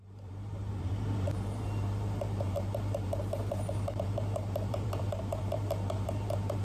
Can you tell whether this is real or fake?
fake